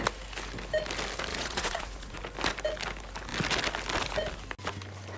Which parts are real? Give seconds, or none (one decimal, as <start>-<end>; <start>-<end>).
0.0-1.3; 2.2-5.2